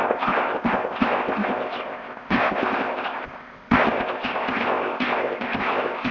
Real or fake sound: fake